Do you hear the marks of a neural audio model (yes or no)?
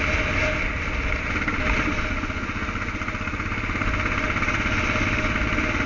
no